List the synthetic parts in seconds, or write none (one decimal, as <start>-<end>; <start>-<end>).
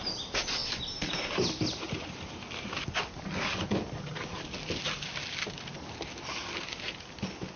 none